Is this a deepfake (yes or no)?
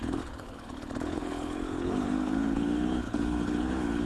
yes